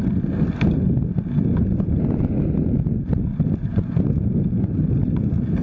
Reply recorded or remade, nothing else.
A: recorded